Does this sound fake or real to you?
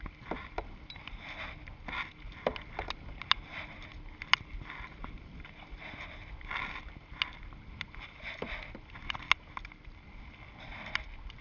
real